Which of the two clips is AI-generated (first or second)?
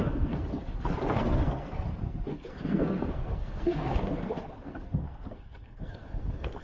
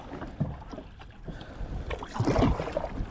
first